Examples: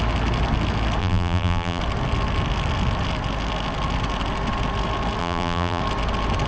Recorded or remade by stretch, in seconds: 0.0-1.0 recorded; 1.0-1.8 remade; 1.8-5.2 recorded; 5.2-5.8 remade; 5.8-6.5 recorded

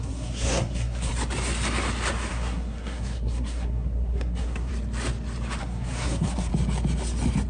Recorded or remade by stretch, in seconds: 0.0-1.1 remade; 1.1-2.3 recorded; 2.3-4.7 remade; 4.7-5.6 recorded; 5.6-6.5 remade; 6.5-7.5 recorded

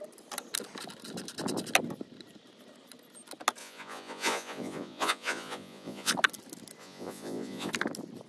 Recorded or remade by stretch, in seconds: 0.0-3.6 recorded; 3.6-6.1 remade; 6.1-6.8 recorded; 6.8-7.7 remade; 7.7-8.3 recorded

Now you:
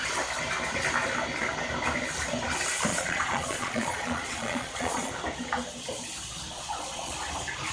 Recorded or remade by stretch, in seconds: 0.0-2.9 recorded; 2.9-5.1 remade; 5.1-6.5 recorded; 6.5-7.1 remade; 7.1-7.7 recorded